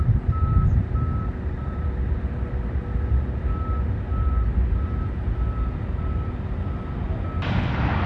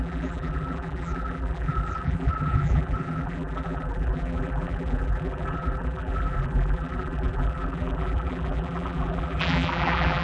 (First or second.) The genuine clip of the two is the first